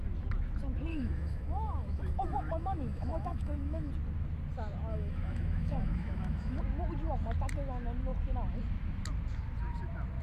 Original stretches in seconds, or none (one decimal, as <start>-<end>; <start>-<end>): 0.0-0.9; 3.9-4.9; 6.6-10.2